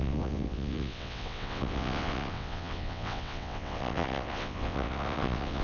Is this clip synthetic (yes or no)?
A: yes